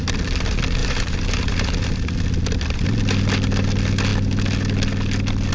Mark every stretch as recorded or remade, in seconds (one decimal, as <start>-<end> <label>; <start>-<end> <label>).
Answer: 0.0-0.8 recorded; 0.8-2.2 remade; 2.2-5.5 recorded